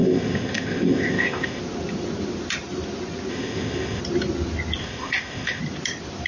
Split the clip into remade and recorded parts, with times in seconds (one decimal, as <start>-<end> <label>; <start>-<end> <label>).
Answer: 0.0-1.6 remade; 1.6-3.3 recorded; 3.3-4.0 remade; 4.0-4.8 recorded; 4.8-5.6 remade; 5.6-6.3 recorded